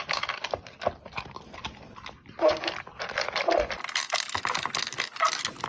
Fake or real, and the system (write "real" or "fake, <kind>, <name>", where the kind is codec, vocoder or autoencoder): real